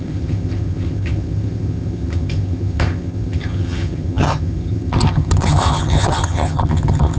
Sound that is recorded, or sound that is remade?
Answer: remade